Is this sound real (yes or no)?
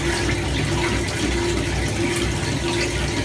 yes